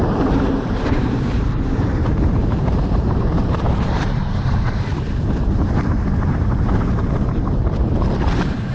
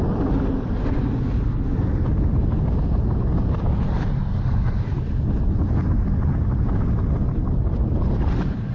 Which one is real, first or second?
second